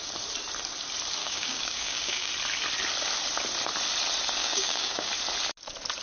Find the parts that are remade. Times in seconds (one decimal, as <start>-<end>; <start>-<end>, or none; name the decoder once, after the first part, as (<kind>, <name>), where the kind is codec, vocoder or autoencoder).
1.2-2.3 (codec, DAC); 4.4-5.1